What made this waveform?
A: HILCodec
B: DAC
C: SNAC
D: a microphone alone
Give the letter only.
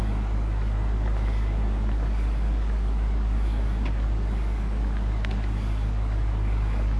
B